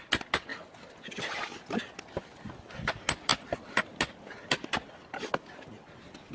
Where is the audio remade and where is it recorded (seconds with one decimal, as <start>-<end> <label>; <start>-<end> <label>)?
0.0-6.3 recorded